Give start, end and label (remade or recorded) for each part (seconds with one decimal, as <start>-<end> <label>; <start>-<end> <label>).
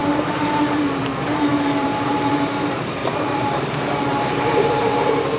0.0-0.8 remade; 0.8-1.5 recorded; 1.5-2.3 remade; 2.3-3.0 recorded; 3.0-3.9 remade; 3.9-5.4 recorded